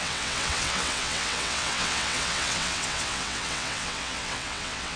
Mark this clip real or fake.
fake